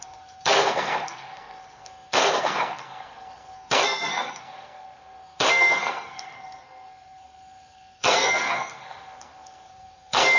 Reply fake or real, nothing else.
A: fake